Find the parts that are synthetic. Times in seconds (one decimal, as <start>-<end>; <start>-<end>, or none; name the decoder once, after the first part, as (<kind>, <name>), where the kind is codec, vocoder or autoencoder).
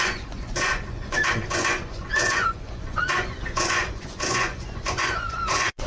0.0-5.9 (vocoder, Vocos)